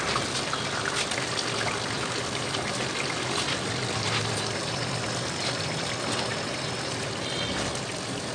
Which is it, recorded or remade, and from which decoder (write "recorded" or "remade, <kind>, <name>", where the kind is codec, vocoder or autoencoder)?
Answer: recorded